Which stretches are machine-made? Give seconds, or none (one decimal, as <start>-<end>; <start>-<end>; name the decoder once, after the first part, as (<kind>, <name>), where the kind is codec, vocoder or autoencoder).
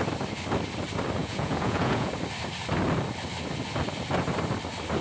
1.2-2.1 (vocoder, Vocos)